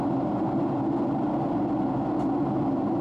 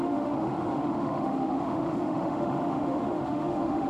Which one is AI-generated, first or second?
second